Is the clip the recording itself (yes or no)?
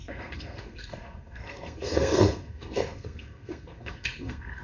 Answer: no